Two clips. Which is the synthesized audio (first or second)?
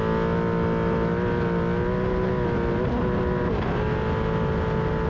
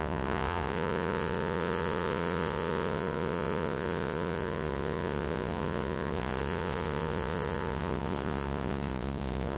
second